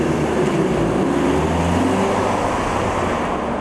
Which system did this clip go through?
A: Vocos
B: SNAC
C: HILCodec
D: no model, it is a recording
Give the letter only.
D